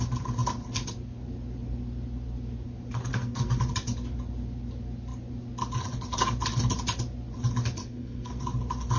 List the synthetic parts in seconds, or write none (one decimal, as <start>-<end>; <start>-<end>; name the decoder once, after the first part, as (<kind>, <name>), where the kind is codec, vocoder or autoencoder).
3.1-3.6 (codec, SNAC); 7.8-8.4